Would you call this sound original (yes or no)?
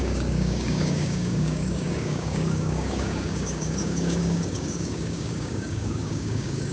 no